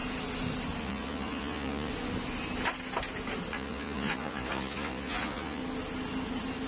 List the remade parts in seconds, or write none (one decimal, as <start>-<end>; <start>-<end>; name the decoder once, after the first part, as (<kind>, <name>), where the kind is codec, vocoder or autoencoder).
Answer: 0.8-1.9 (vocoder, Vocos); 3.5-5.6